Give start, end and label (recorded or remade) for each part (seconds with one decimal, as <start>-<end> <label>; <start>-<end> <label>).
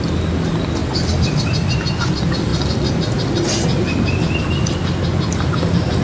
0.0-6.0 recorded